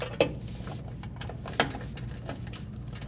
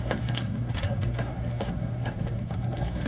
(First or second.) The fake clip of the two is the second